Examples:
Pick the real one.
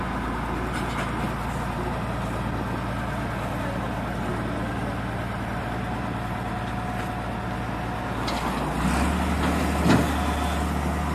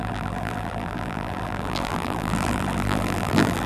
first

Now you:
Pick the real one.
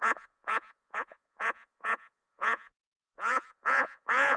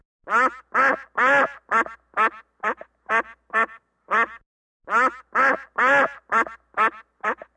second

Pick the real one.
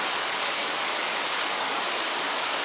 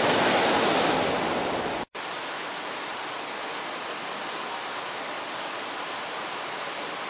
second